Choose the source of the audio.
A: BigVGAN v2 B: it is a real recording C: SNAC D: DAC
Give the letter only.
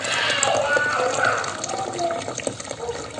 B